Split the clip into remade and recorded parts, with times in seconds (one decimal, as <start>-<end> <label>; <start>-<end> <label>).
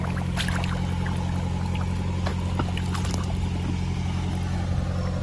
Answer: 0.0-5.2 recorded